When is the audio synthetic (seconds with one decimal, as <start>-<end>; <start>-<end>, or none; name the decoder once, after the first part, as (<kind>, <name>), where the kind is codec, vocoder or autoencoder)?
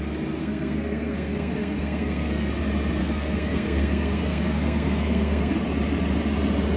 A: 0.4-2.5 (codec, SNAC); 3.0-5.5